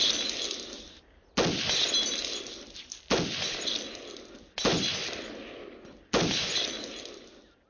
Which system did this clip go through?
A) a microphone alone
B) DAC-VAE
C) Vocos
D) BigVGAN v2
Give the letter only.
A